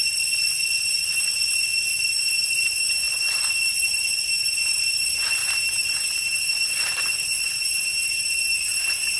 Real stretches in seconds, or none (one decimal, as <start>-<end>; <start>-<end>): 0.0-5.4; 6.4-7.8